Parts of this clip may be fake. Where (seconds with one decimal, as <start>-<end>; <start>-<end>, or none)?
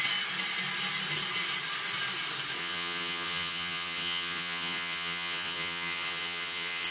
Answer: 2.6-6.9